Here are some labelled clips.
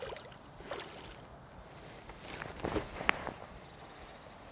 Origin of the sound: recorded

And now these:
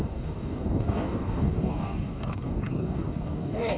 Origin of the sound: remade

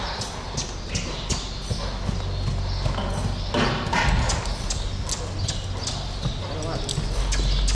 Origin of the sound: recorded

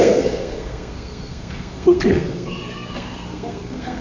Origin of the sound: remade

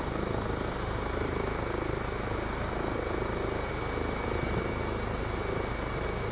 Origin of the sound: recorded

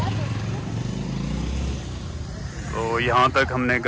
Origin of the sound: recorded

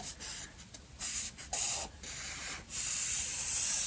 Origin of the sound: recorded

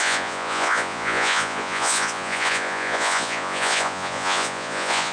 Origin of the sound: remade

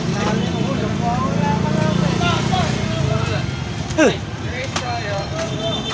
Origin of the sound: recorded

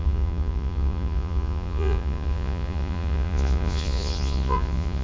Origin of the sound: remade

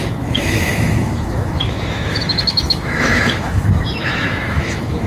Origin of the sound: remade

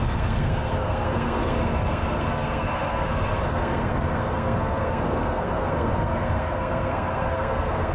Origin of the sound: remade